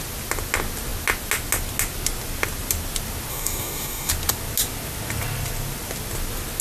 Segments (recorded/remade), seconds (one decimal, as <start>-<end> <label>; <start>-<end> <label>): 0.0-3.3 recorded; 3.3-4.1 remade; 4.1-6.6 recorded